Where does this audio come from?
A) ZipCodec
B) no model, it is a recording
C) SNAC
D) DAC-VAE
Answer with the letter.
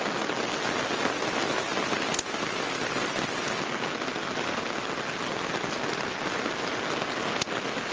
B